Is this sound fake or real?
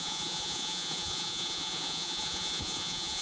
fake